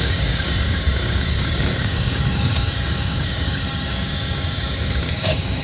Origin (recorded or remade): remade